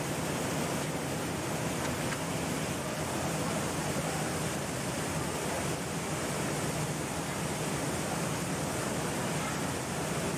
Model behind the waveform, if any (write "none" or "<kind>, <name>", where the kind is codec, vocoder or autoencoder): none